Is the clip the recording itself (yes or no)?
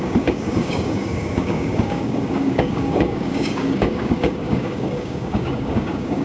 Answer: no